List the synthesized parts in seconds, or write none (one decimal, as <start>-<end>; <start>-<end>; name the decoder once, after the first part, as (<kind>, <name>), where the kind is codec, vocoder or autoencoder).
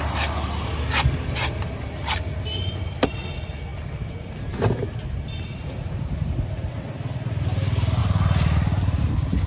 none